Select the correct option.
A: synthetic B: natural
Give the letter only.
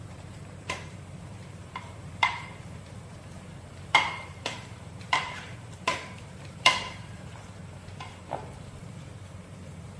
A